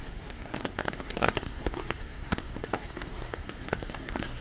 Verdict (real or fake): fake